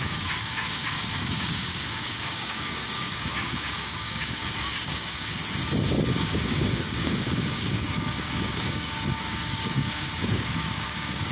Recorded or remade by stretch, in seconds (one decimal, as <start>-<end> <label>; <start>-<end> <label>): 0.0-5.4 remade; 5.4-6.1 recorded; 6.1-11.3 remade